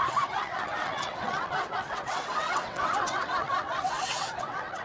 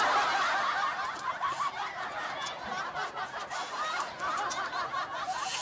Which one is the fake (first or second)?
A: first